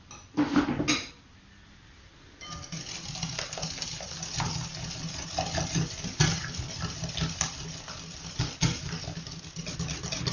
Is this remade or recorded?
recorded